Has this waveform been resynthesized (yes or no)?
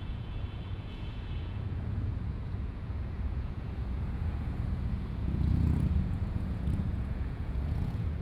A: yes